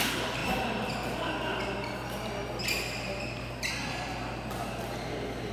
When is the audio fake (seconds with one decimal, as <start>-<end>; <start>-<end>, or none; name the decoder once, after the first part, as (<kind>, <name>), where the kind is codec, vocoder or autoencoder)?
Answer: none